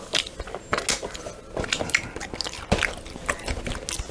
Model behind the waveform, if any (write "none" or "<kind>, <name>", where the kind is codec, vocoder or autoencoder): none